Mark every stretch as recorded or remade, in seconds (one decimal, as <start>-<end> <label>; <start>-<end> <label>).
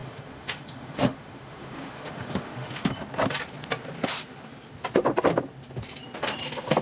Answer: 0.0-2.9 remade; 2.9-6.8 recorded